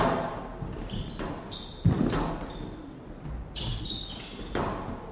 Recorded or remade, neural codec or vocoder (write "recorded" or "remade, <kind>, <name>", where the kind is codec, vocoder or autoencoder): recorded